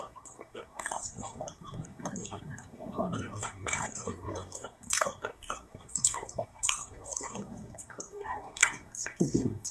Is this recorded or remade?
remade